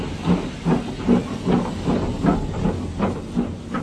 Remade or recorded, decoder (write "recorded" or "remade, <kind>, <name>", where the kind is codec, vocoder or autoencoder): recorded